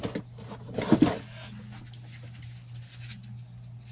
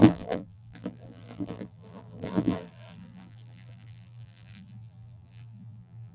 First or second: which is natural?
first